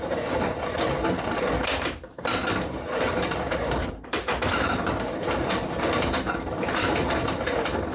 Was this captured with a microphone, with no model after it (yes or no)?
no